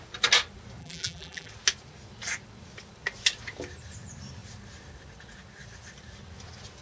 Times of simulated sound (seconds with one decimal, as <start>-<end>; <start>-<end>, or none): 0.8-1.5